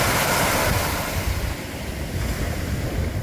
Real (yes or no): yes